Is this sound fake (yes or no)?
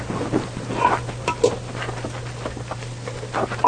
no